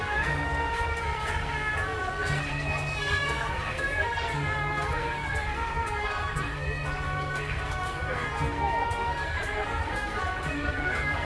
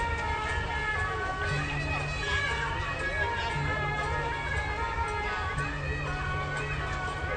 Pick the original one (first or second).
second